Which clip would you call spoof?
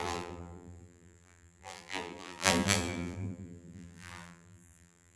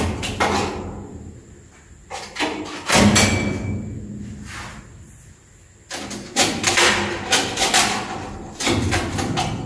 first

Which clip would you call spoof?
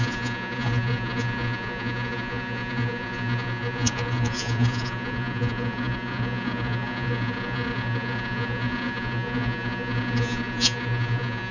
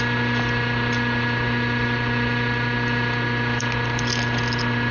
first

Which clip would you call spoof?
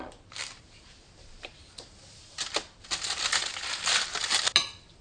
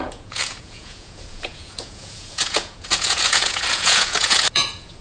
second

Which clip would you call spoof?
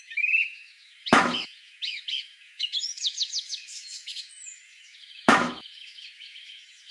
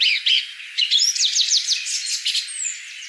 first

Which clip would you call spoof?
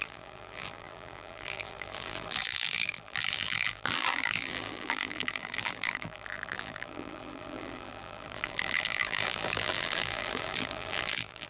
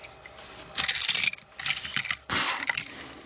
first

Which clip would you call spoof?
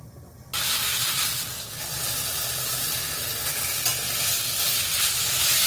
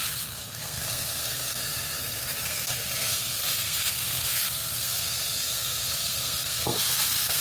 second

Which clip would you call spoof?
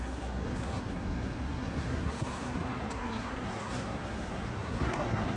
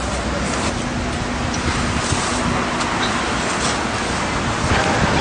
first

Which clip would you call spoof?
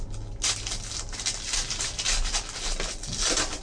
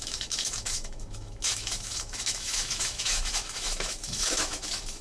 second